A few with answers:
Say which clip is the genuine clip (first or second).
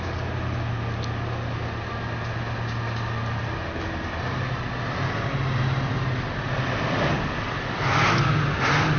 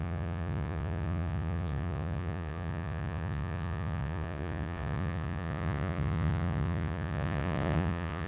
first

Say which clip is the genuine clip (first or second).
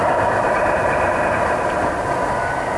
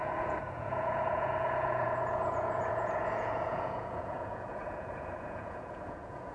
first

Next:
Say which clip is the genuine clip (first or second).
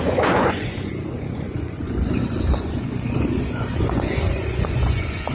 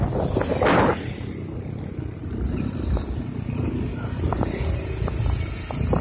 second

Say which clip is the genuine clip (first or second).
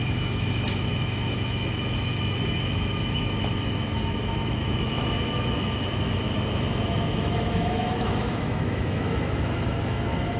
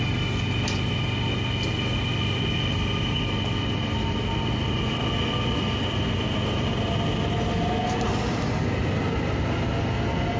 second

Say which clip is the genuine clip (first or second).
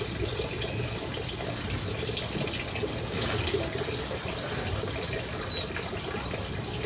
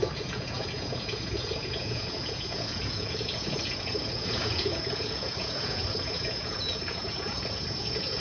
first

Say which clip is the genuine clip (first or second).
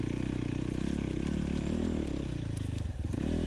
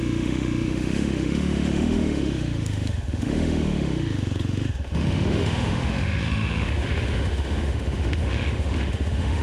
first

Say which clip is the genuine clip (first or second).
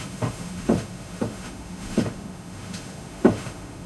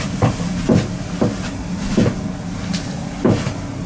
second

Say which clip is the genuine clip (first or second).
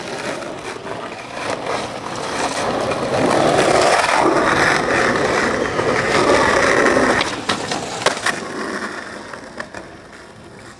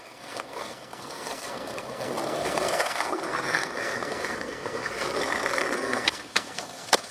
first